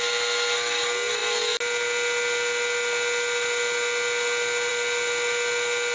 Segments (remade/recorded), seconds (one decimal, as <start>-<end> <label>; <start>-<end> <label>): 0.0-5.9 recorded